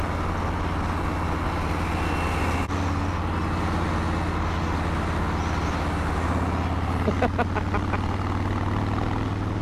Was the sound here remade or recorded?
recorded